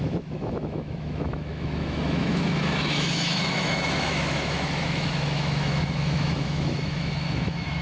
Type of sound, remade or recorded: remade